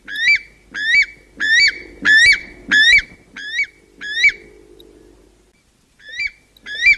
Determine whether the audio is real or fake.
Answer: real